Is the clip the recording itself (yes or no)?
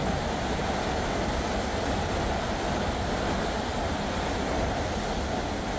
yes